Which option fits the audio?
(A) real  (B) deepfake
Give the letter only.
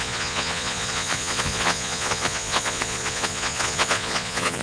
B